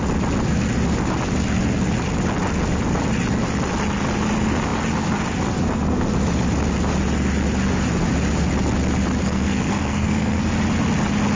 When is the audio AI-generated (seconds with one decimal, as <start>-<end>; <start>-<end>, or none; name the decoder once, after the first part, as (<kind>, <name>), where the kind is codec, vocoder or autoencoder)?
9.2-10.5 (codec, SNAC)